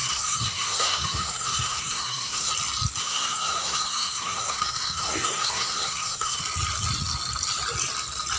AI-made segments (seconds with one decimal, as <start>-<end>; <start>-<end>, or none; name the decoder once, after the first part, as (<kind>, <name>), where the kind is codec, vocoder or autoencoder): 0.0-2.5 (codec, SNAC); 3.0-6.4